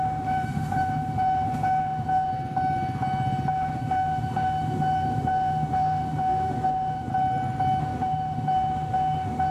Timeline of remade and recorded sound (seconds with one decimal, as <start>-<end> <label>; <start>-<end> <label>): 0.0-2.3 remade; 2.3-3.5 recorded; 3.5-7.1 remade; 7.1-7.8 recorded; 7.8-9.5 remade